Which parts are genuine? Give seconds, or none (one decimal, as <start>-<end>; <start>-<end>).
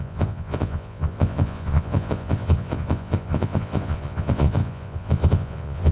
none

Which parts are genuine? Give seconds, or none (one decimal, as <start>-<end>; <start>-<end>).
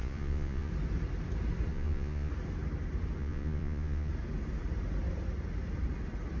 0.7-1.7; 2.3-3.2; 4.1-6.4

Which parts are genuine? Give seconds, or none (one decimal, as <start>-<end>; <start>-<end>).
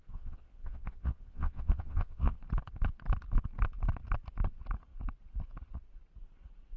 2.4-6.8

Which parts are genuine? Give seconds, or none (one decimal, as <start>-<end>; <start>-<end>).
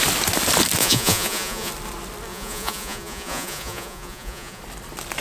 0.0-0.8; 1.7-2.3; 4.6-5.2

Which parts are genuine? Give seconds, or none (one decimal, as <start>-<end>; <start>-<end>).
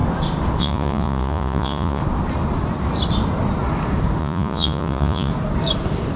0.0-0.6; 2.0-4.2; 5.3-6.2